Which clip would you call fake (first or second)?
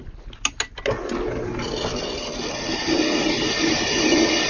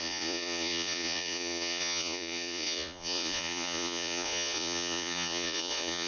second